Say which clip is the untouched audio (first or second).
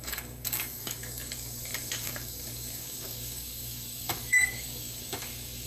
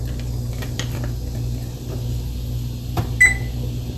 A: second